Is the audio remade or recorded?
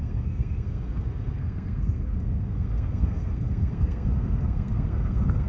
remade